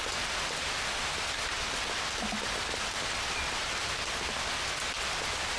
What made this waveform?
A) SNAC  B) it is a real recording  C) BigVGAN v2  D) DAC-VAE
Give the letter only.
B